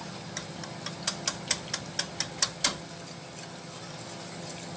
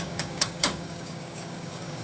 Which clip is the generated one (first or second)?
second